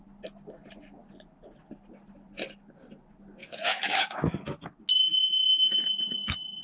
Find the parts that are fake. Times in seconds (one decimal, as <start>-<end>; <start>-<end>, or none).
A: 3.4-4.3; 4.9-6.6